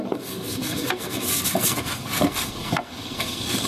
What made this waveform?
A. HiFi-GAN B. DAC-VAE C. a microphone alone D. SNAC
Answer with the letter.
D